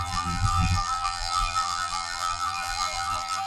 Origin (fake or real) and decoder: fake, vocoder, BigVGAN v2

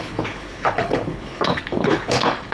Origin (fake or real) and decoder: fake, codec, HILCodec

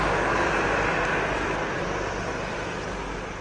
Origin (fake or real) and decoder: real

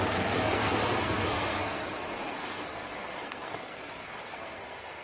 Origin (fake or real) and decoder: fake, codec, SNAC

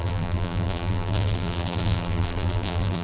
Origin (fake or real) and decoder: fake, vocoder, BigVGAN v2